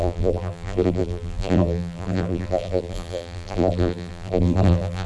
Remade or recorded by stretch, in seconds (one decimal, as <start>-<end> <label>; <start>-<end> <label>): 0.0-5.1 remade